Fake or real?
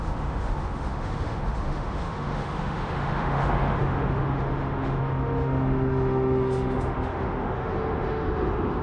fake